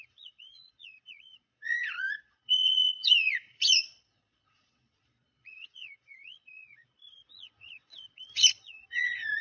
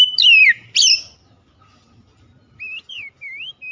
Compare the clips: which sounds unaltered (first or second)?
second